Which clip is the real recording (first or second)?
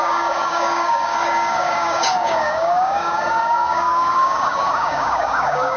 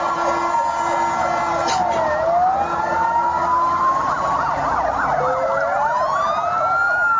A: second